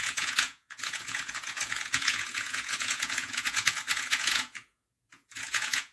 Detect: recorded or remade remade